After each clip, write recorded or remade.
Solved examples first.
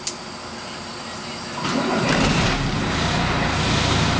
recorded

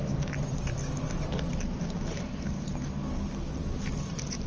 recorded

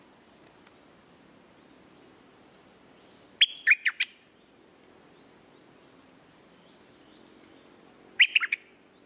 recorded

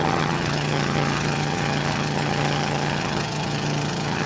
remade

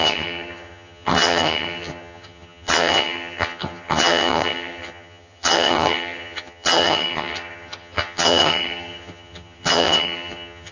remade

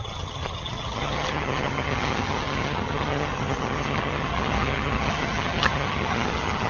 remade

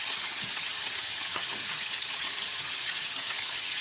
remade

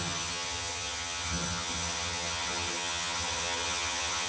remade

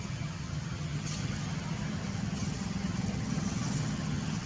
remade